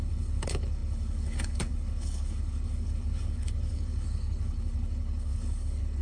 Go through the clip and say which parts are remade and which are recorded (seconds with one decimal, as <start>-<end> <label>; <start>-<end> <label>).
0.0-6.0 remade